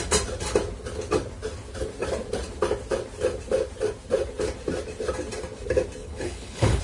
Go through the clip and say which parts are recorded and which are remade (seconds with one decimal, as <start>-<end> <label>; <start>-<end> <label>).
0.0-6.0 recorded; 6.0-6.8 remade